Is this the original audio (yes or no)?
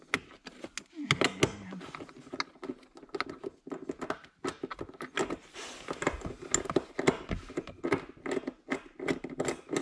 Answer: yes